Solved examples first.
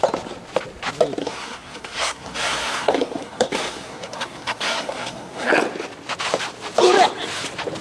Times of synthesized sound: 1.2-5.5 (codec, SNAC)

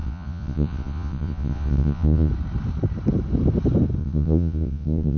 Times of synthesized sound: 0.0-2.3 (vocoder, Vocos); 4.0-5.2

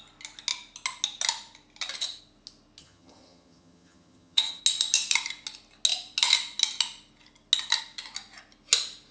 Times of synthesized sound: 2.8-4.6 (vocoder, HiFi-GAN)

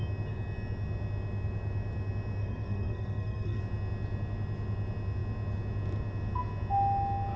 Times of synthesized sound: 2.4-3.6 (codec, SNAC)

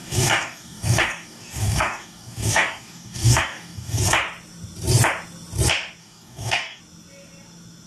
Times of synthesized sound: 0.0-4.0 (codec, DAC); 6.0-6.8

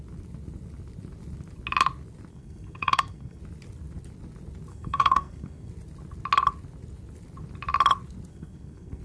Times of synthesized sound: 2.3-3.4 (codec, SNAC); 4.7-5.7; 8.3-9.0

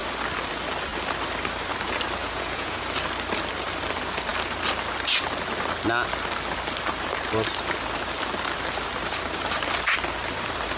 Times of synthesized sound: 2.2-2.8 (vocoder, Vocos)

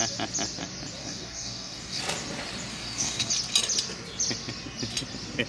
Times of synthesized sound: 1.0-2.0 (codec, DAC); 2.7-3.3